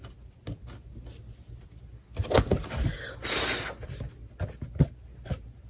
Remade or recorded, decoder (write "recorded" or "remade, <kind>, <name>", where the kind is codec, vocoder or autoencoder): recorded